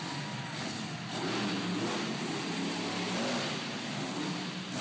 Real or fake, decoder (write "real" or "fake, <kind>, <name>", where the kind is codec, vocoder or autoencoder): real